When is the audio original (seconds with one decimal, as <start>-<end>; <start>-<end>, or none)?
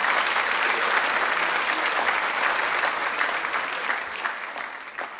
0.0-3.0; 4.5-5.2